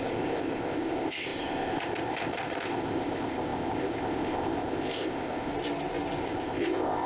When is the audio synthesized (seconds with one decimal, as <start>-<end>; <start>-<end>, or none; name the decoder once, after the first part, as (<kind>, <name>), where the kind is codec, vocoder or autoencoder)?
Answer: 0.0-5.5 (codec, ZipCodec); 6.2-7.1